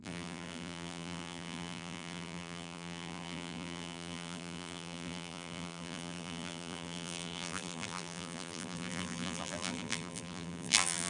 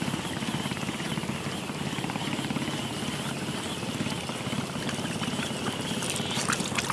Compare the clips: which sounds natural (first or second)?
second